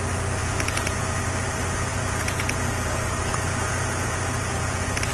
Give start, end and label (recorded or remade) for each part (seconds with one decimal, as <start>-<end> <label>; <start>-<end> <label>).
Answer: 0.0-0.4 recorded; 0.4-1.2 remade; 1.2-1.9 recorded; 1.9-5.1 remade